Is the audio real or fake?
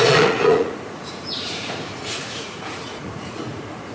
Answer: fake